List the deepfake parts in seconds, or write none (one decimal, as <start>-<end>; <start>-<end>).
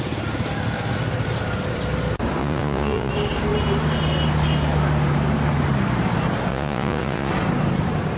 2.4-3.1; 6.5-7.3